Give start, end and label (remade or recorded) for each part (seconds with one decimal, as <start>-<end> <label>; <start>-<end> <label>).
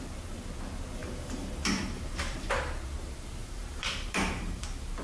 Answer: 0.0-1.0 recorded; 1.0-2.5 remade; 2.5-3.4 recorded; 3.4-4.6 remade; 4.6-5.0 recorded